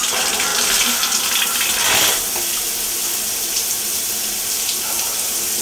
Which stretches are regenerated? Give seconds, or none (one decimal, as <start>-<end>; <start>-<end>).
3.0-5.6